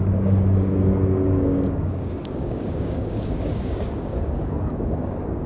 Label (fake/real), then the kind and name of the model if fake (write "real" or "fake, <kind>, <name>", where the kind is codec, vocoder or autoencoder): fake, codec, DAC